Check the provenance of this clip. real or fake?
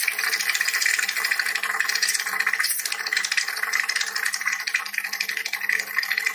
fake